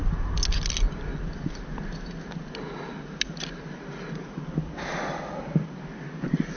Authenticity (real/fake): real